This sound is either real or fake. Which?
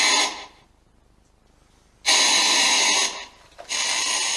real